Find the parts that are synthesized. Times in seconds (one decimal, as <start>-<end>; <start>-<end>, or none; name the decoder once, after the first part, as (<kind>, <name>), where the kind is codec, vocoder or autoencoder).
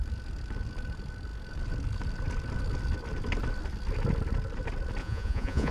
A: 5.0-5.7 (vocoder, Vocos)